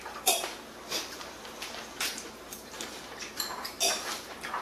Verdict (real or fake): fake